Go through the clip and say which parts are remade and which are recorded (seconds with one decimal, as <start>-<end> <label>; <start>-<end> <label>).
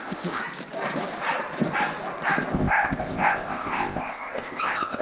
0.0-0.4 remade; 0.4-2.5 recorded; 2.5-5.0 remade